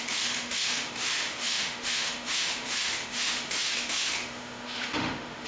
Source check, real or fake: fake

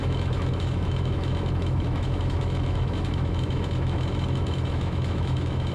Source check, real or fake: fake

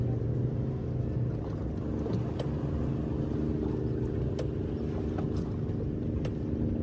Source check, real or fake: real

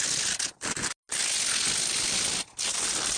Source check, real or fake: real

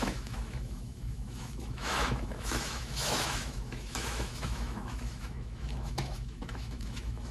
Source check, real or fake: fake